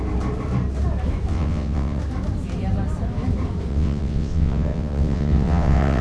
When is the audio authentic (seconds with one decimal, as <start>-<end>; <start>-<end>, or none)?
0.0-1.3; 2.0-3.7